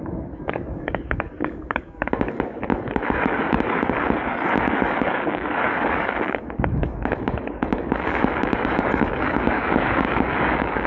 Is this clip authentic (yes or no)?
no